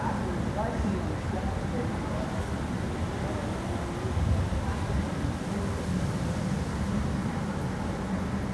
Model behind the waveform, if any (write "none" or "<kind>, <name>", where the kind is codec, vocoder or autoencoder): none